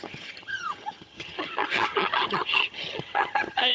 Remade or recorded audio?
remade